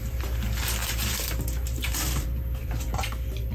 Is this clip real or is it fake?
fake